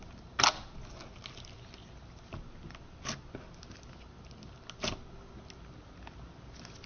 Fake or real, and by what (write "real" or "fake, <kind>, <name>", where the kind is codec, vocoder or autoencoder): real